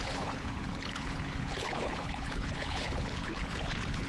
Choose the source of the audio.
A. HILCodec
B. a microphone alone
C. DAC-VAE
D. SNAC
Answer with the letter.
A